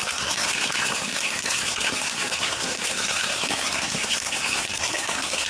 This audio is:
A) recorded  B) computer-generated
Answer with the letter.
B